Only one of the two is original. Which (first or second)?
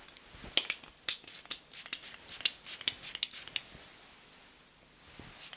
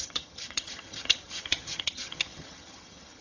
first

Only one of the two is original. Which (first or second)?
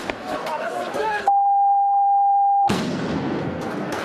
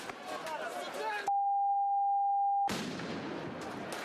second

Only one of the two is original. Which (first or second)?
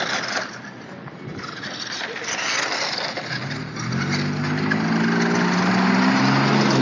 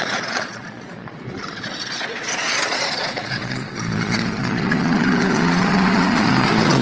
first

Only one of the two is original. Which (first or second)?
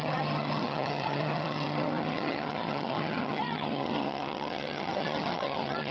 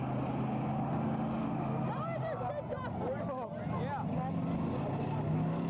second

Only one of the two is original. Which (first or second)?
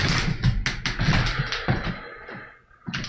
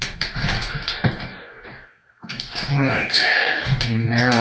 first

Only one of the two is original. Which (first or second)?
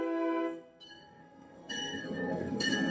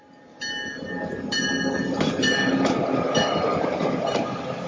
second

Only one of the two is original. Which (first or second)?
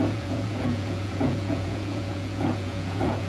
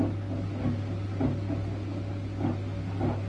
second